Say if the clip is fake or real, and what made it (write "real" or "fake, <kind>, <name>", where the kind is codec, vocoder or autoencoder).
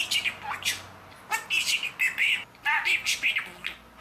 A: real